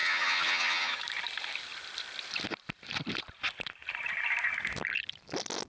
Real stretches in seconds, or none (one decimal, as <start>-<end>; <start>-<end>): 1.0-5.7

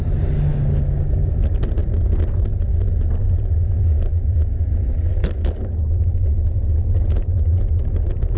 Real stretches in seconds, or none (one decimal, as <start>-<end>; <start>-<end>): 0.0-0.5; 1.3-8.4

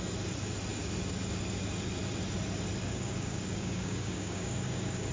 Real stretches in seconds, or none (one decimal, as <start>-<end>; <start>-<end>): 0.0-2.8

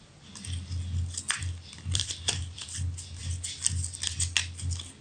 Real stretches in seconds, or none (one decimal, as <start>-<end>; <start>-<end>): 0.0-1.4; 3.2-5.0

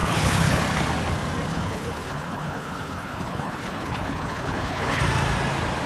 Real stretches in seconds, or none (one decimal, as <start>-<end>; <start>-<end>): 0.6-1.5; 5.0-5.9

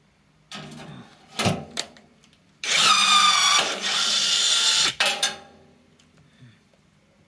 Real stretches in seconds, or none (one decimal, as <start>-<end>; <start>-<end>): 0.0-3.0; 4.4-7.3

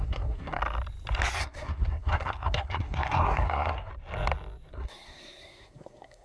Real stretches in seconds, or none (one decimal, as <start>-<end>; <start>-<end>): 0.6-1.4; 3.9-4.7

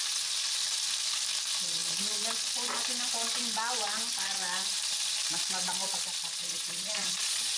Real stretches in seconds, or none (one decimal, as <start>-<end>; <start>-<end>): 0.0-6.4